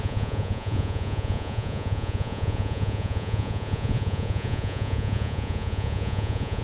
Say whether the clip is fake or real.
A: fake